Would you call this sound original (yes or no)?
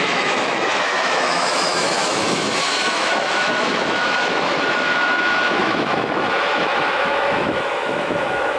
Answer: no